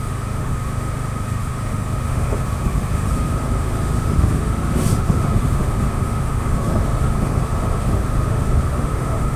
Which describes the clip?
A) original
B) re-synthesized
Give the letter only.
B